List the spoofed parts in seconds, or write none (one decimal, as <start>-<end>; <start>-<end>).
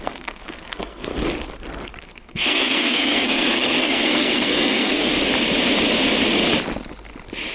0.0-1.1; 2.0-5.1